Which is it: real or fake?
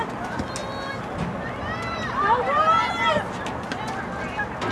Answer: real